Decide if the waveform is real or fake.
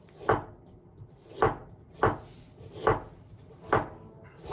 real